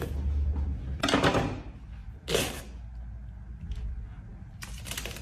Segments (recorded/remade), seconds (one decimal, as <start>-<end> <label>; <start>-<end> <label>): 0.0-2.0 recorded; 2.0-2.6 remade; 2.6-5.2 recorded